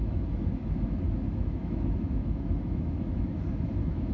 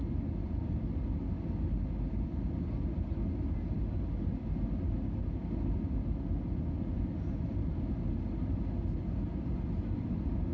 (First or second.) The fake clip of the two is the first